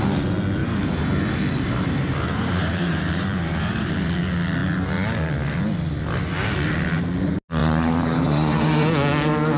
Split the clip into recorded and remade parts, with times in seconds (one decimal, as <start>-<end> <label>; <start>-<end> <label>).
0.0-0.6 recorded; 0.6-3.9 remade; 3.9-7.6 recorded; 7.6-8.2 remade; 8.2-9.6 recorded